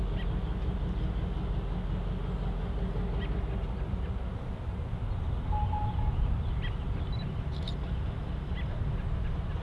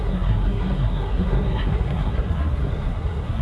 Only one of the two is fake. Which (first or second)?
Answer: second